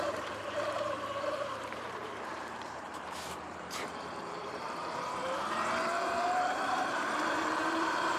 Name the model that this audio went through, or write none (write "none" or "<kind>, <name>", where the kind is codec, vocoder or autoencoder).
vocoder, BigVGAN v2